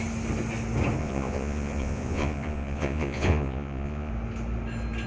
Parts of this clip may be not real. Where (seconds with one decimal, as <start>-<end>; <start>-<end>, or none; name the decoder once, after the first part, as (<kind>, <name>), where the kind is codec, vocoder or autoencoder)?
1.0-4.1 (vocoder, Vocos)